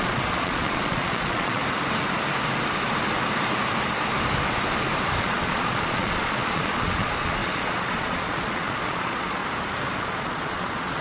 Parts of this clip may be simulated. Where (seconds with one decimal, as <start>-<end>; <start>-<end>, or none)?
0.0-1.6; 5.2-9.4; 10.0-11.0